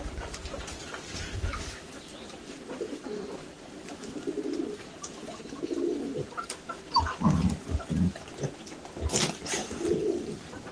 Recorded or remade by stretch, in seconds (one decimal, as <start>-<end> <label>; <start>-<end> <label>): 0.0-10.7 recorded

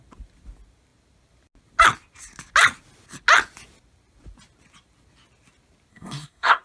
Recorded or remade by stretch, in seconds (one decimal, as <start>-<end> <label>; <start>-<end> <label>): 0.0-5.9 recorded; 5.9-6.6 remade

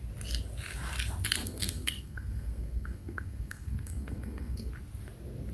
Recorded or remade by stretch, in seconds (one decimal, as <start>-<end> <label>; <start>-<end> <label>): 0.0-1.4 recorded; 1.4-4.7 remade; 4.7-5.5 recorded

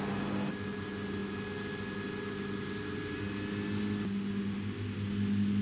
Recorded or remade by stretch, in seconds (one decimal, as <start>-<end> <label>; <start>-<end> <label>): 0.0-5.6 recorded

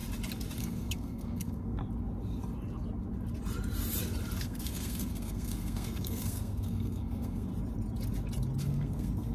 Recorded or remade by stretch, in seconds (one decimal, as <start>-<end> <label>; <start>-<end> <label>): 0.0-0.6 recorded; 0.6-1.8 remade; 1.8-4.4 recorded; 4.4-7.5 remade; 7.5-8.6 recorded; 8.6-9.3 remade

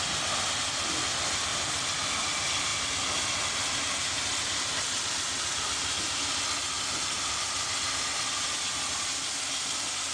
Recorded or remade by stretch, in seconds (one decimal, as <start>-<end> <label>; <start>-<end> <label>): 0.0-10.1 recorded

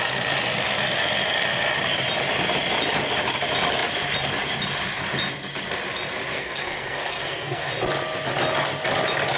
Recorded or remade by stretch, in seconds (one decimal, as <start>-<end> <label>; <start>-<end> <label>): 0.0-6.3 recorded; 6.3-7.7 remade; 7.7-9.4 recorded

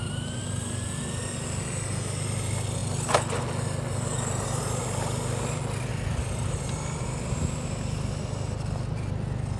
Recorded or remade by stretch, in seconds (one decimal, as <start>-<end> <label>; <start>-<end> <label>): 0.0-9.6 recorded